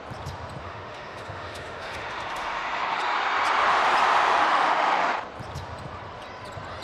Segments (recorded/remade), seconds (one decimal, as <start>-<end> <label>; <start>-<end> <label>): 0.0-0.6 recorded; 0.6-3.0 remade; 3.0-4.5 recorded; 4.5-5.1 remade; 5.1-6.8 recorded